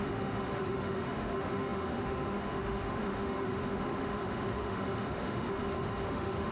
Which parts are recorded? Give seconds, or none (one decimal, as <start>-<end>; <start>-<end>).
none